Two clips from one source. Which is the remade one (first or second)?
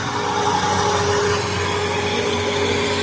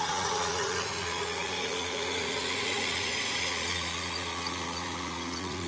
second